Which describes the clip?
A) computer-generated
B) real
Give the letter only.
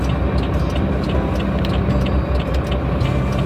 B